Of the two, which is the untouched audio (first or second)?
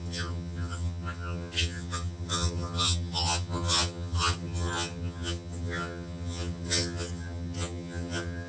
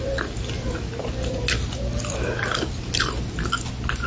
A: second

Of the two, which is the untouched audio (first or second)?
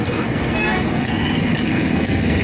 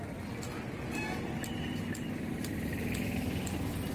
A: second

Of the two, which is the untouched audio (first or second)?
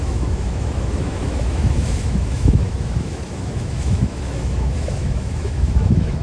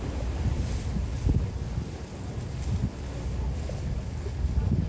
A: second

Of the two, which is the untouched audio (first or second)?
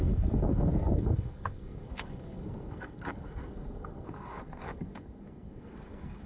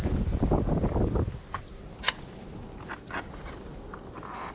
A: second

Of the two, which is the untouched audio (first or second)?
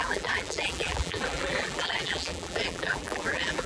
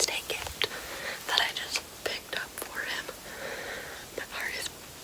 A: second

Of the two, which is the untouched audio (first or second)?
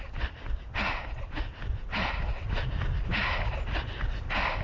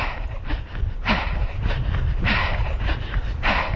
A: first